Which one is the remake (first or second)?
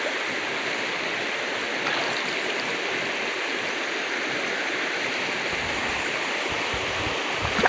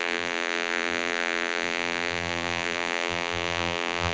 second